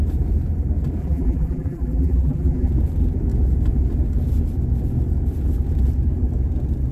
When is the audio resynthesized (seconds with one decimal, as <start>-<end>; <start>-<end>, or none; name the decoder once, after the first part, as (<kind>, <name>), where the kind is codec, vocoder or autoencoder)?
1.0-2.7 (vocoder, BigVGAN v2)